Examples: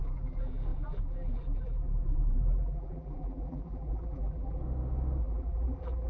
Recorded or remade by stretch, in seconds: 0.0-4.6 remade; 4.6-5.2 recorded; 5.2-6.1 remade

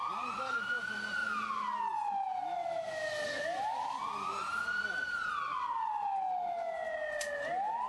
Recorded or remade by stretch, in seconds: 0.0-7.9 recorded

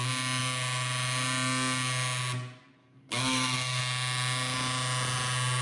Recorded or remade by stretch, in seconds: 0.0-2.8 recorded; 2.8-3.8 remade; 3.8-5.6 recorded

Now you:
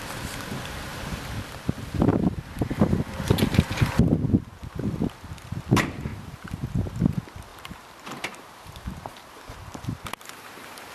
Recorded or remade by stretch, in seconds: 0.0-6.1 recorded; 6.1-7.0 remade; 7.0-7.5 recorded; 7.5-10.9 remade

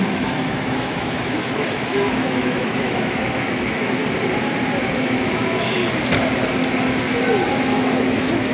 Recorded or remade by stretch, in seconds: 0.0-4.0 remade; 4.0-4.9 recorded; 4.9-5.8 remade; 5.8-7.5 recorded; 7.5-8.5 remade

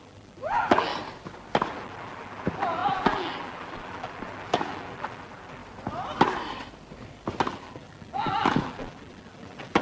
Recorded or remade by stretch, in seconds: 0.0-0.9 remade; 0.9-1.7 recorded; 1.7-5.6 remade; 5.6-7.5 recorded; 7.5-9.8 remade